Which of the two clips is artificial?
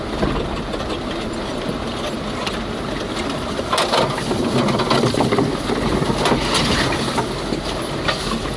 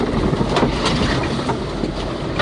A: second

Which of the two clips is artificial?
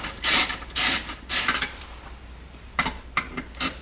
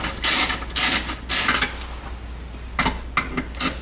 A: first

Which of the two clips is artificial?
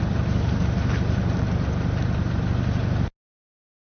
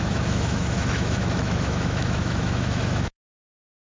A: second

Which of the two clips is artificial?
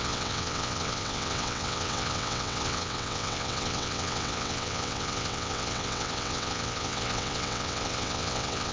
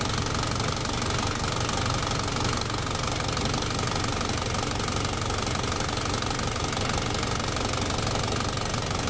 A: first